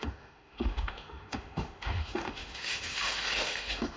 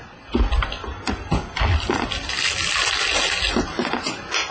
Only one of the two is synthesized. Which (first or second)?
first